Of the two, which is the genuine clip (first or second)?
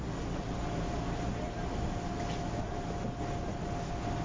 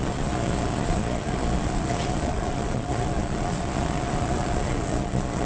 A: first